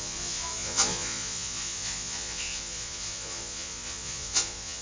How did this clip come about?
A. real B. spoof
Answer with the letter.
B